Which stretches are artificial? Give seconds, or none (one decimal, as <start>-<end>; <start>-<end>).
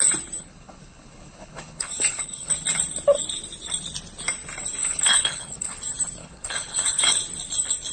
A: 0.4-2.5; 4.8-5.8; 6.2-7.2